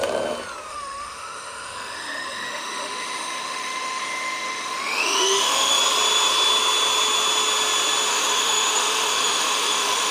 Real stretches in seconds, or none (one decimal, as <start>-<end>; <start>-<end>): 0.0-0.7; 5.8-8.1